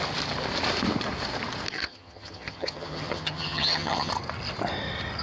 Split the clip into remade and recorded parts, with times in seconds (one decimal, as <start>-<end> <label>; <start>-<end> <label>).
0.0-1.8 recorded; 1.8-4.1 remade; 4.1-5.2 recorded